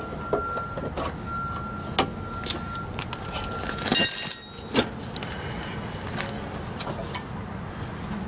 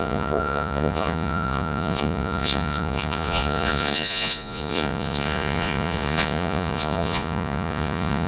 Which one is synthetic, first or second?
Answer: second